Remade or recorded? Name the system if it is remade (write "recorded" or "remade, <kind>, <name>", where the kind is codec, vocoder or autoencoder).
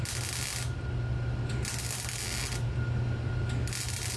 recorded